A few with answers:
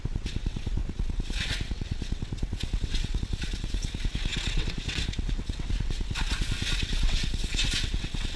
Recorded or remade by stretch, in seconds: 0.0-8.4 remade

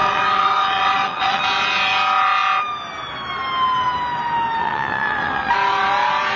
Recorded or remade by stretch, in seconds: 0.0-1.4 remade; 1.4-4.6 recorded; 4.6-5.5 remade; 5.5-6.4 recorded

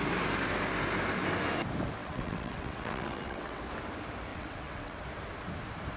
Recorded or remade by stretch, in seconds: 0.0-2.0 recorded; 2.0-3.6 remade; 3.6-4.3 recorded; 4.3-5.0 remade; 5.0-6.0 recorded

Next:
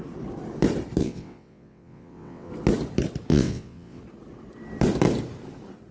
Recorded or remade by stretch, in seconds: 0.0-1.0 recorded; 1.0-2.5 remade; 2.5-3.3 recorded; 3.3-4.0 remade; 4.0-5.9 recorded

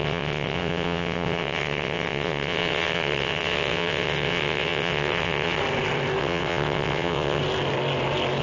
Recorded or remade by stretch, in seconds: 0.0-5.6 remade; 5.6-6.2 recorded; 6.2-7.4 remade; 7.4-8.4 recorded

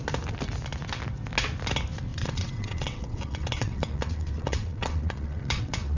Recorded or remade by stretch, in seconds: 0.0-2.1 recorded; 2.1-6.0 remade

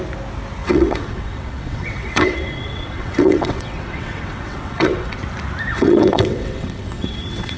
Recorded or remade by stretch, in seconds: 0.0-0.6 recorded; 0.6-5.2 remade; 5.2-5.7 recorded; 5.7-7.6 remade

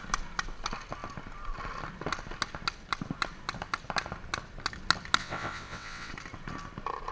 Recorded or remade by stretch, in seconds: 0.0-5.2 recorded; 5.2-6.1 remade; 6.1-7.1 recorded